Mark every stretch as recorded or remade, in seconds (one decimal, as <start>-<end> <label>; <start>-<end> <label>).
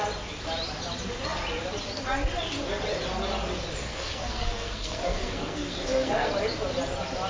0.0-3.8 recorded; 3.8-6.3 remade; 6.3-7.3 recorded